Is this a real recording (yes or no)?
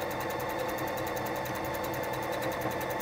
yes